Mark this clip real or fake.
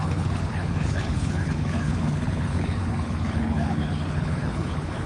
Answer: fake